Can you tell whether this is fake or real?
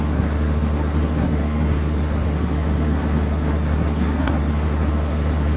fake